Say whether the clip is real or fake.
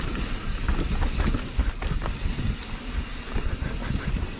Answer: real